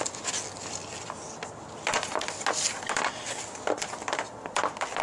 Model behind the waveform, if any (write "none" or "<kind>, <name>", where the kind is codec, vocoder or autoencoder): none